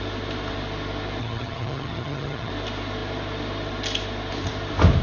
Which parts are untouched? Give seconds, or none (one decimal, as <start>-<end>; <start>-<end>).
0.0-1.2; 2.5-5.0